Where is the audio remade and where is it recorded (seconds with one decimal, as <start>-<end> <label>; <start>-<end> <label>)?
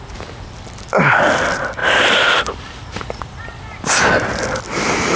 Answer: 0.0-1.8 recorded; 1.8-4.6 remade; 4.6-5.2 recorded